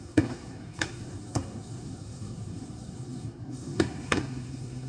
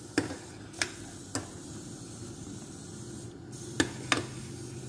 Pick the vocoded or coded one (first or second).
first